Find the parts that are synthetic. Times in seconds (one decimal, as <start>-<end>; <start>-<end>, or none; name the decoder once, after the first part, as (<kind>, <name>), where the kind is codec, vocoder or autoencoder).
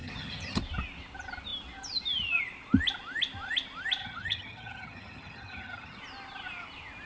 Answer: 0.0-0.6 (vocoder, HiFi-GAN); 4.0-6.0